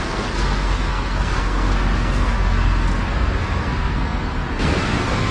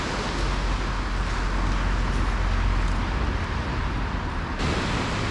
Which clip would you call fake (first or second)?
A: first